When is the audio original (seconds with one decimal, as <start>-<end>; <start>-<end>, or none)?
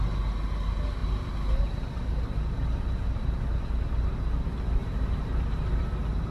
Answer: 0.0-4.8; 5.8-6.3